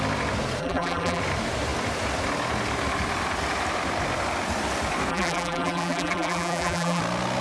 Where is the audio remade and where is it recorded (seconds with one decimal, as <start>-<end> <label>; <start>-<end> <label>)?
0.0-0.6 recorded; 0.6-1.2 remade; 1.2-5.1 recorded; 5.1-7.0 remade; 7.0-7.4 recorded